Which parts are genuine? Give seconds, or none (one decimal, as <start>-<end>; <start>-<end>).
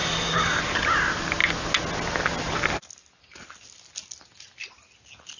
0.6-5.4